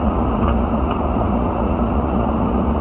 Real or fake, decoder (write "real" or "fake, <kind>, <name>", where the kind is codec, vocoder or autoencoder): fake, vocoder, Vocos